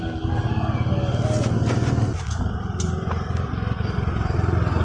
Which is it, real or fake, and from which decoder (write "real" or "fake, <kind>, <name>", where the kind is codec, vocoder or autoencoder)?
real